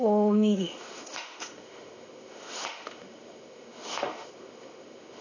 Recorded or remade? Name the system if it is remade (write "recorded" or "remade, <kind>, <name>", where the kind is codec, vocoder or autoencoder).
remade, autoencoder, DAC-VAE